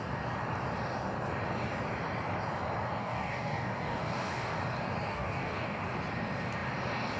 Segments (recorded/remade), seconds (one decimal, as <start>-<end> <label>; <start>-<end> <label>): 0.0-3.0 recorded; 3.0-4.6 remade; 4.6-5.1 recorded; 5.1-5.8 remade; 5.8-7.2 recorded

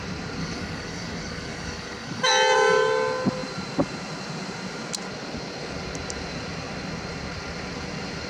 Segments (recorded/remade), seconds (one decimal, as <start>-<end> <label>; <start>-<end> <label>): 0.0-0.4 recorded; 0.4-2.3 remade; 2.3-8.3 recorded

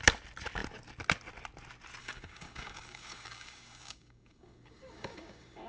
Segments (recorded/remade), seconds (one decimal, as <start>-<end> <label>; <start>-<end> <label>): 0.0-2.0 recorded; 2.0-5.7 remade